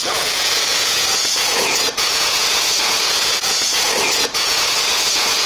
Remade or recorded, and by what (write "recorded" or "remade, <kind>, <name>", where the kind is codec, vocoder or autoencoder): remade, vocoder, Vocos